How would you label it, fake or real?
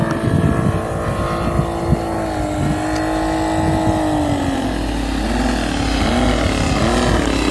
real